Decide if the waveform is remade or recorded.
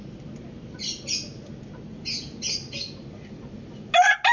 recorded